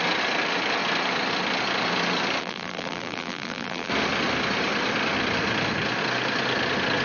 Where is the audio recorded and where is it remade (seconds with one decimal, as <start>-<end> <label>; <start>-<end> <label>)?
0.0-2.4 recorded; 2.4-3.9 remade; 3.9-7.0 recorded